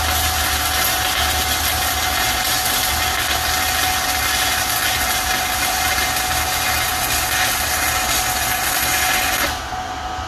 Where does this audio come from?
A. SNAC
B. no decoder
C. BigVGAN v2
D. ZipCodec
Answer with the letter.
B